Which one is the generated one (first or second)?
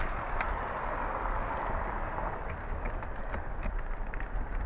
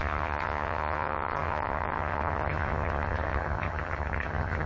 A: second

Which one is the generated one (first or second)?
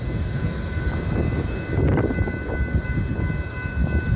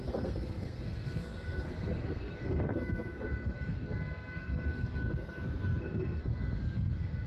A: second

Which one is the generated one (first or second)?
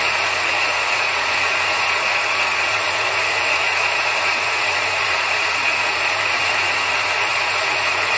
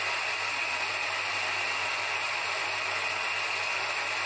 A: first